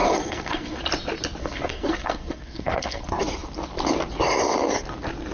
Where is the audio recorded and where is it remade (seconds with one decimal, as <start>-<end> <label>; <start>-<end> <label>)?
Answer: 0.0-0.8 remade; 0.8-1.4 recorded; 1.4-3.0 remade; 3.0-5.3 recorded